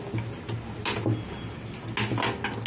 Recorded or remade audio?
recorded